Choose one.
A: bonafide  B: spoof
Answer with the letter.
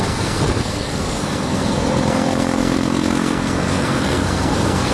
B